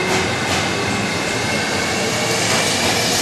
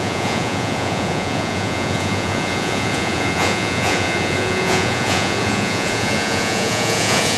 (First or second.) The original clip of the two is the first